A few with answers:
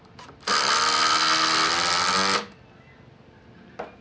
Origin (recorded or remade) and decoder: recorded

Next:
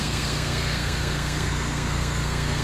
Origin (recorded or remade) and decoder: remade, codec, SNAC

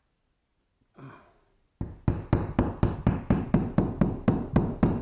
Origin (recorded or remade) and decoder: recorded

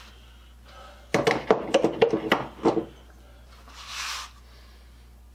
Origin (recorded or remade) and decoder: recorded